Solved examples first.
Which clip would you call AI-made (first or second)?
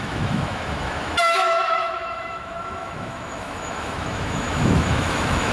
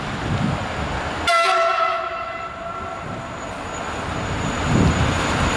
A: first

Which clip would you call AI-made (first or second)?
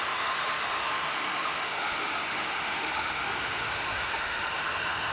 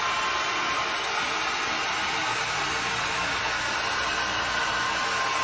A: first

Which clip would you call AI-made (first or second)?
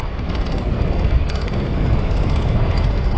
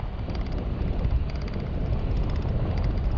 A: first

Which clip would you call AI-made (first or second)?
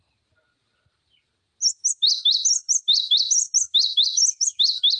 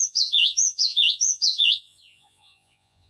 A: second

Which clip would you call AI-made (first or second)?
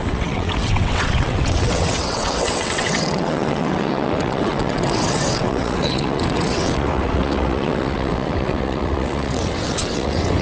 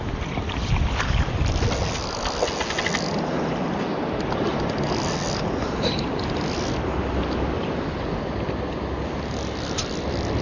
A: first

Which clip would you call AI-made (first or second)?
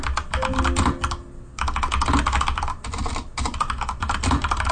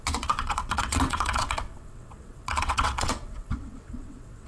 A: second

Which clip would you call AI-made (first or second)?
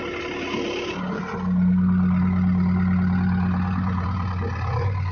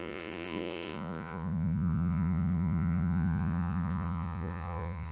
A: second